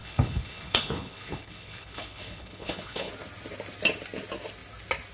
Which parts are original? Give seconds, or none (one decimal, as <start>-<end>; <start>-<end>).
3.1-5.1